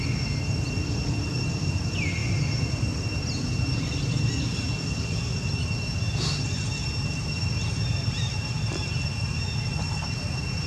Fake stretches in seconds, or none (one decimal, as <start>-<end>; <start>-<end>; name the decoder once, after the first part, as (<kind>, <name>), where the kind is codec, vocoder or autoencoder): none